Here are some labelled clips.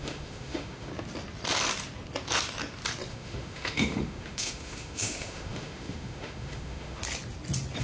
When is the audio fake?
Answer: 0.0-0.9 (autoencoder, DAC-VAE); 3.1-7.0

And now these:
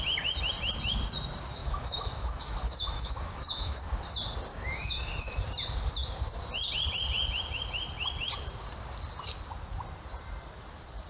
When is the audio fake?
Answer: 1.6-3.8 (autoencoder, DAC-VAE); 4.5-5.4